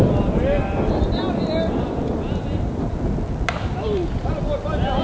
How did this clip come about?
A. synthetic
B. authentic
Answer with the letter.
B